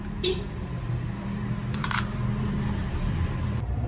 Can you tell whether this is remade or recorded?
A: remade